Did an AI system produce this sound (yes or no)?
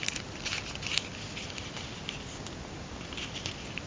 no